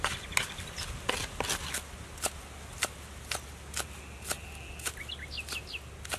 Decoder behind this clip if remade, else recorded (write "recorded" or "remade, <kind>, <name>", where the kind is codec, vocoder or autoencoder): recorded